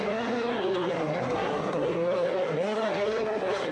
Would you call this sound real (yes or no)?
no